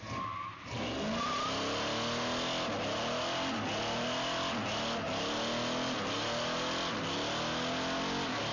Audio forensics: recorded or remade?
recorded